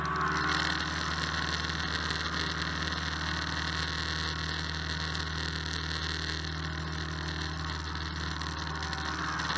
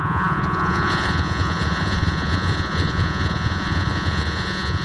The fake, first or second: second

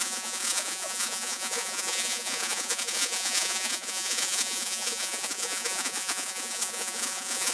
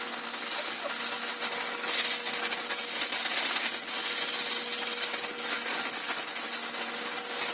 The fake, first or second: first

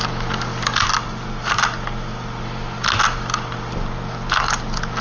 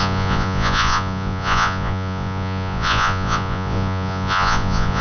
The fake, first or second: second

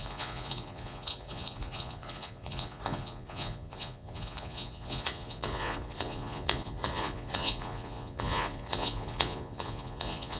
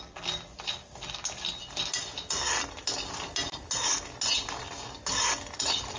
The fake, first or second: first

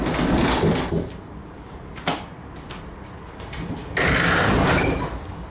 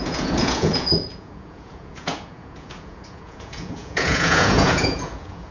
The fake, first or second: second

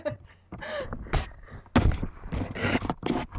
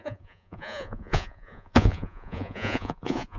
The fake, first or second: second